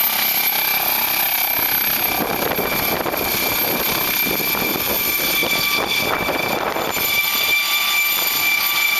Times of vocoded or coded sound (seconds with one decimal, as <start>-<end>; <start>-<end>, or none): 4.7-9.0